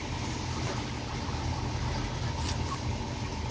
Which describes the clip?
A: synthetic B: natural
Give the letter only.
B